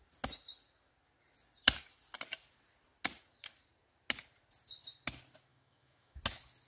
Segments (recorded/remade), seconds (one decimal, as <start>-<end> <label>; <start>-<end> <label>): 0.0-5.5 recorded; 5.5-6.2 remade; 6.2-6.7 recorded